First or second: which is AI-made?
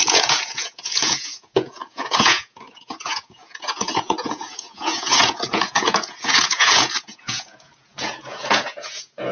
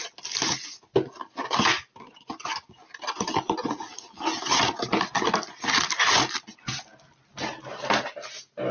first